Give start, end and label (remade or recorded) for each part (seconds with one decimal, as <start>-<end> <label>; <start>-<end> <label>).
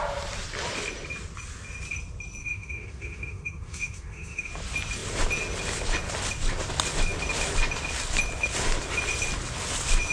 0.0-2.4 recorded; 2.4-4.5 remade; 4.5-10.1 recorded